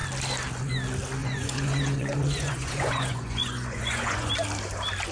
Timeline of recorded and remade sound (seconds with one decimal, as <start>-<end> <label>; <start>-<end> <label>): 0.0-1.2 recorded; 1.2-4.3 remade; 4.3-5.1 recorded